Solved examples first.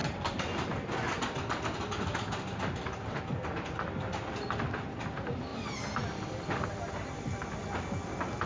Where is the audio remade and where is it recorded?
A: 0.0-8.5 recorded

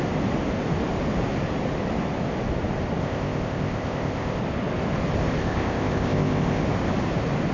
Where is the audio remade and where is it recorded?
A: 0.0-3.0 recorded; 3.0-4.4 remade; 4.4-5.4 recorded; 5.4-6.6 remade; 6.6-7.5 recorded